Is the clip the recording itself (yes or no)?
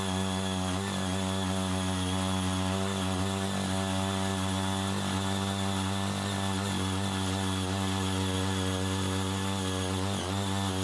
yes